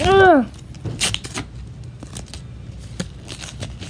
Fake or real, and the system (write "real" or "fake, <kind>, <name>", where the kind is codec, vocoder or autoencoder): real